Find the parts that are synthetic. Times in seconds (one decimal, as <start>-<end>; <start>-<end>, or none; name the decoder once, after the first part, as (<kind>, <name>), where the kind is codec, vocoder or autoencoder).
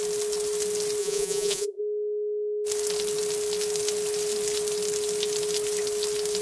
1.0-1.8 (vocoder, Vocos)